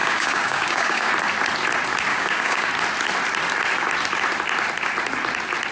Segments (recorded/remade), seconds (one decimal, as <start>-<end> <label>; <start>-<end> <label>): 0.0-1.1 remade; 1.1-2.1 recorded; 2.1-2.7 remade; 2.7-5.7 recorded

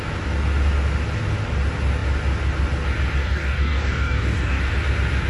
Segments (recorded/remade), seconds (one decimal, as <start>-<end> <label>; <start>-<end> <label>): 0.0-3.2 recorded; 3.2-4.6 remade; 4.6-5.3 recorded

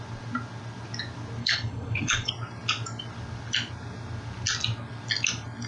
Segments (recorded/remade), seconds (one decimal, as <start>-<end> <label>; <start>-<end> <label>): 0.0-1.4 recorded; 1.4-2.3 remade; 2.3-5.7 recorded

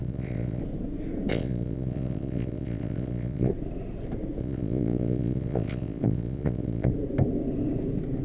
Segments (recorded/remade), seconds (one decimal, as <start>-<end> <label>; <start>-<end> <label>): 0.0-0.6 remade; 0.6-1.3 recorded; 1.3-3.5 remade; 3.5-4.4 recorded; 4.4-6.9 remade; 6.9-8.2 recorded

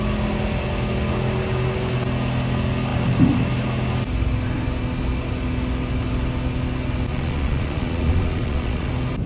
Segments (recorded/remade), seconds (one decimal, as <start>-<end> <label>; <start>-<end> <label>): 0.0-7.1 recorded; 7.1-8.9 remade; 8.9-9.3 recorded

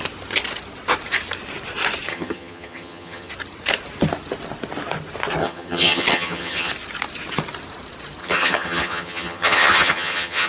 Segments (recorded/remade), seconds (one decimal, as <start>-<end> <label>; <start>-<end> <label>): 0.0-2.1 recorded; 2.1-3.3 remade; 3.3-5.4 recorded; 5.4-6.7 remade; 6.7-8.2 recorded; 8.2-10.5 remade

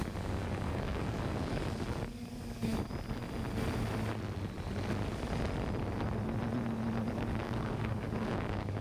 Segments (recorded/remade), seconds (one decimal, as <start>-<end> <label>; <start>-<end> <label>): 0.0-2.7 remade; 2.7-7.1 recorded; 7.1-8.8 remade